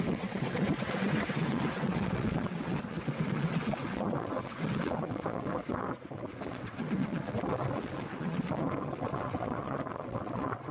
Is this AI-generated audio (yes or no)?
yes